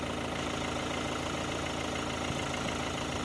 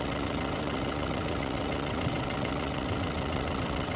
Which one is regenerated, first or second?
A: second